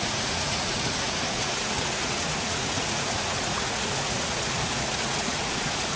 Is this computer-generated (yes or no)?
yes